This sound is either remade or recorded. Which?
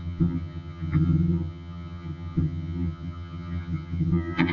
remade